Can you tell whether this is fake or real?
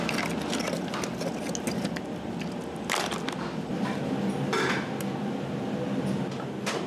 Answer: real